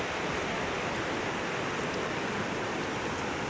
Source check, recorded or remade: recorded